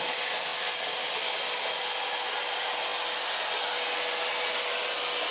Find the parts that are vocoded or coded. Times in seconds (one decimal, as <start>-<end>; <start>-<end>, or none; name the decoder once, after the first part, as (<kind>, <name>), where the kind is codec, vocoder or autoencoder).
none